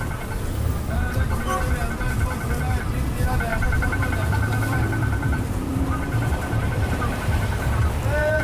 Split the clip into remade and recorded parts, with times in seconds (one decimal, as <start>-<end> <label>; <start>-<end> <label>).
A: 0.0-3.5 recorded; 3.5-8.4 remade